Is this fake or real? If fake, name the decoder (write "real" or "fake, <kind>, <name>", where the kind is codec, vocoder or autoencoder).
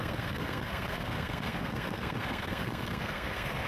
fake, codec, SNAC